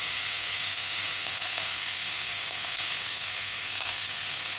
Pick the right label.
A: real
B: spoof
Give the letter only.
B